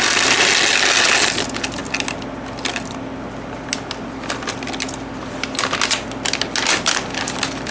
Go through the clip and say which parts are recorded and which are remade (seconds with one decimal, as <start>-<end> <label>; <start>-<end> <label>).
0.0-7.7 recorded